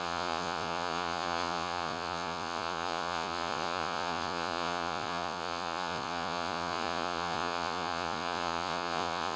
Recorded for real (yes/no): no